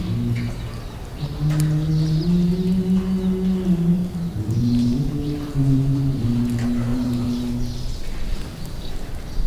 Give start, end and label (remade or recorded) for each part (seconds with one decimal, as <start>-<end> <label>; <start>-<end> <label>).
0.0-4.0 recorded; 4.0-6.2 remade; 6.2-6.9 recorded; 6.9-7.5 remade; 7.5-8.3 recorded; 8.3-9.1 remade; 9.1-9.5 recorded